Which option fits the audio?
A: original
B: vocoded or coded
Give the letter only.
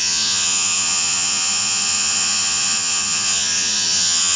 B